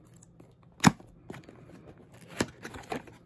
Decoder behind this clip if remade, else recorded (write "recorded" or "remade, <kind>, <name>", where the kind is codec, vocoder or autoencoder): recorded